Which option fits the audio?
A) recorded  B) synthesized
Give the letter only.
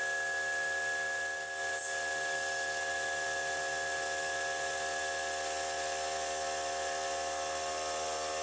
A